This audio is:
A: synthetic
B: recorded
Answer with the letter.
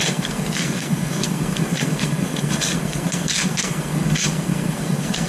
A